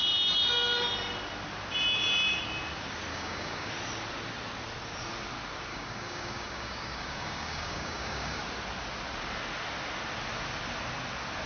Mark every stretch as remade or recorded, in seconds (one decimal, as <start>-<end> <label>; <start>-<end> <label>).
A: 0.0-3.1 recorded; 3.1-3.7 remade; 3.7-5.7 recorded; 5.7-8.4 remade; 8.4-11.5 recorded